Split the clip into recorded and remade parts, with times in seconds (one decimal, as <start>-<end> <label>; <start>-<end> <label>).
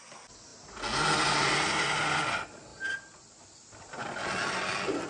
0.0-5.1 recorded